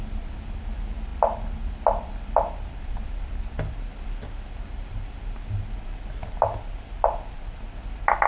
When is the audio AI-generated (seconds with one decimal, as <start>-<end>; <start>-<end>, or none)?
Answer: none